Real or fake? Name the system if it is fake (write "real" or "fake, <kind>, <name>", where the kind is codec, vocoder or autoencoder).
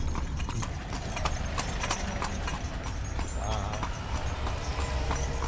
real